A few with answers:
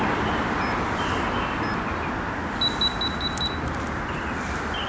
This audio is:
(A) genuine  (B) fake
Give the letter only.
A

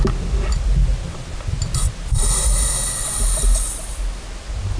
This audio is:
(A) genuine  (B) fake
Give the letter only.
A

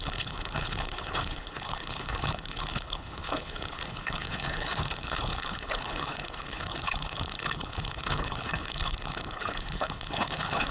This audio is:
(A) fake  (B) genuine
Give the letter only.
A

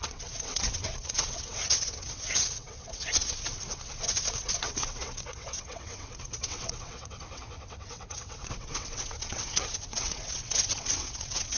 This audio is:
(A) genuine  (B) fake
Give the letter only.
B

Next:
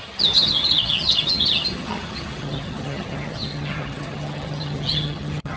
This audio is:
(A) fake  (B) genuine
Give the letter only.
A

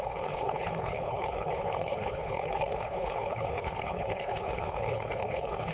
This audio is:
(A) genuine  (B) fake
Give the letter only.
B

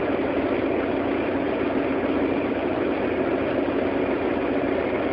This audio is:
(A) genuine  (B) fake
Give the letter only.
A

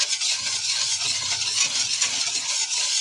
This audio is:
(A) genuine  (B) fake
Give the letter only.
B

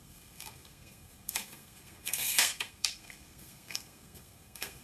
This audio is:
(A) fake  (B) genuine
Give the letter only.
A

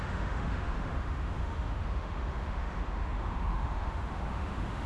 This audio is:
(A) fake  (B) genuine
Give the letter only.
A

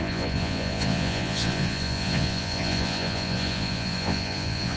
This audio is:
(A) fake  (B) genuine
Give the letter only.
A